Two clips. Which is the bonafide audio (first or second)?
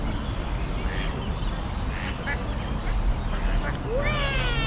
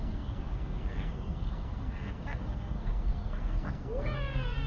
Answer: first